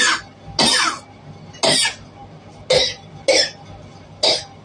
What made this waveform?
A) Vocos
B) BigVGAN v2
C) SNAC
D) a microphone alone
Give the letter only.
D